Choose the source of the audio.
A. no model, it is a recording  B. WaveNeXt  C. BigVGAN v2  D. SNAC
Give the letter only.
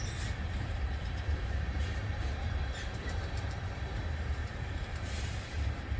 C